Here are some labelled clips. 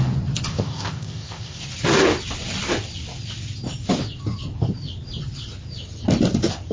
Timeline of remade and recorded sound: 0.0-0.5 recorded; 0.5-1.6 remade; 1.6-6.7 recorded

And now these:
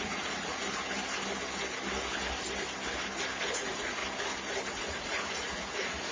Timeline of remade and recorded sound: 0.0-0.6 remade; 0.6-3.4 recorded; 3.4-4.0 remade; 4.0-4.7 recorded; 4.7-6.1 remade

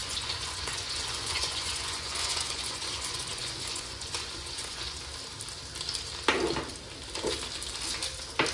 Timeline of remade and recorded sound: 0.0-5.0 remade; 5.0-8.5 recorded

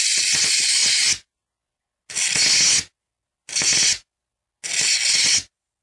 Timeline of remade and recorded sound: 0.0-5.8 recorded

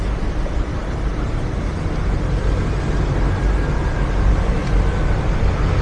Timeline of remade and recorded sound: 0.0-5.8 recorded